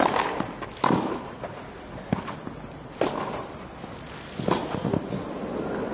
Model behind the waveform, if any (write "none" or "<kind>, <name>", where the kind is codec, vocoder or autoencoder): none